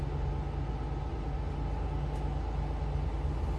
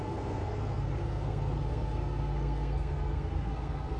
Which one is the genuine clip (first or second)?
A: first